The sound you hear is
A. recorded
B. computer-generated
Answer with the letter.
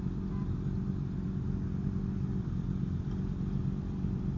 A